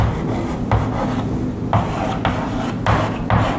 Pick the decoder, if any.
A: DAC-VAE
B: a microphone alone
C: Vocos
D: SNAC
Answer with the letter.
B